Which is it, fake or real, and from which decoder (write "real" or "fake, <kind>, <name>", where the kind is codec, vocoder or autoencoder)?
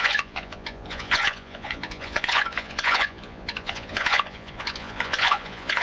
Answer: fake, vocoder, Vocos